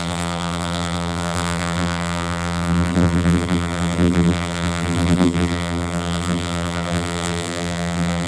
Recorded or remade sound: remade